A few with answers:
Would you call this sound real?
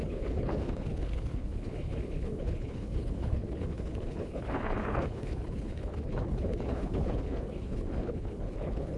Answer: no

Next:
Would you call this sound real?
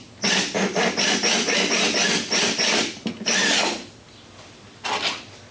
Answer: yes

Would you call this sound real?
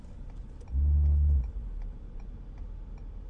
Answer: yes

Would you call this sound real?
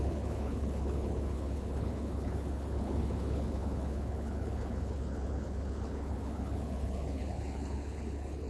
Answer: no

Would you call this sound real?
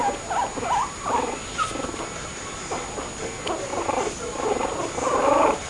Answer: yes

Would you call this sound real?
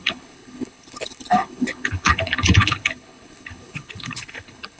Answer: no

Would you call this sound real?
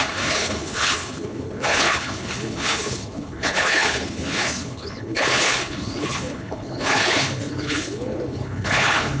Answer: no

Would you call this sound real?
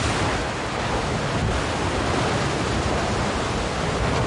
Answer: yes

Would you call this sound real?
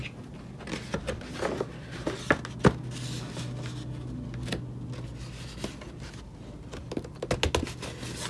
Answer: yes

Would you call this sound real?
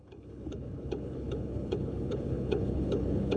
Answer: no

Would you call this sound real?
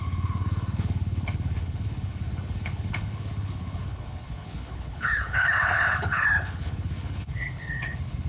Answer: no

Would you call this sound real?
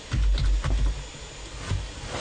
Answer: yes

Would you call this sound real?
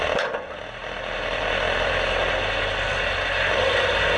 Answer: yes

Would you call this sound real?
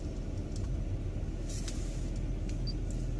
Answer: yes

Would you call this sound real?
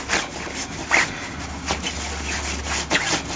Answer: yes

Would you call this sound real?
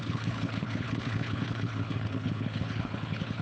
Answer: no